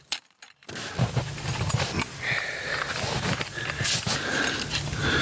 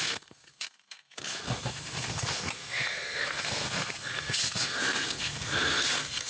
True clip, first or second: first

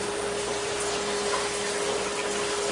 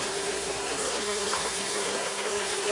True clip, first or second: first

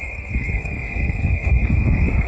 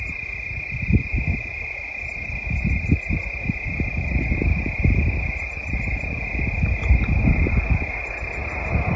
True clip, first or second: second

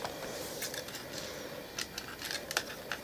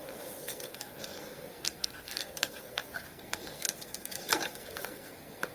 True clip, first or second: first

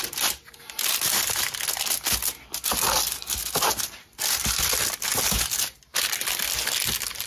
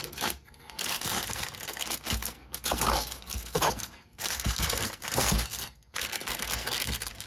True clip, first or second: first